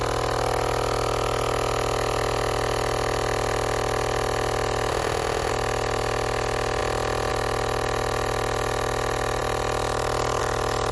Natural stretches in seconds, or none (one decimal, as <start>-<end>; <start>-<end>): 0.0-4.9; 5.5-10.9